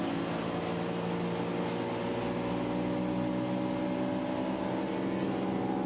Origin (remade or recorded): recorded